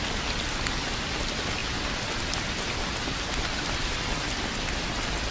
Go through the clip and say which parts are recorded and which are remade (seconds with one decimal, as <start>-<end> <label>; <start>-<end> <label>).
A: 0.0-5.3 recorded